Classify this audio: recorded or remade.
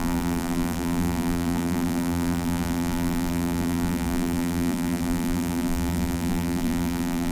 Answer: remade